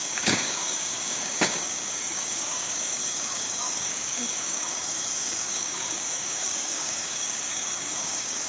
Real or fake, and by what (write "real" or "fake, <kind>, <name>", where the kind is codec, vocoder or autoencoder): fake, codec, DAC